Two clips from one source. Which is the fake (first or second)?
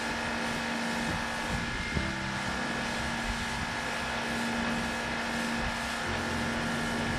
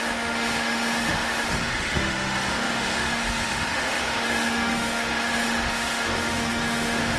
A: second